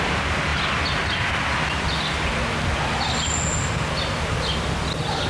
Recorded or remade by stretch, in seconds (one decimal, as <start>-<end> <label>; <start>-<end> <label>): 0.0-5.3 recorded